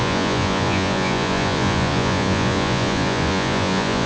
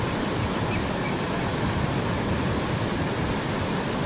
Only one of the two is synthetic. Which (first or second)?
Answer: first